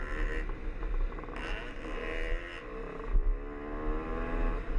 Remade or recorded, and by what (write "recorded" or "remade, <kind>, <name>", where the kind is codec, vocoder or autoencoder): recorded